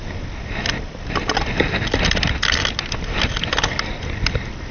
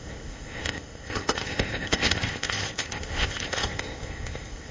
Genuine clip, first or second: first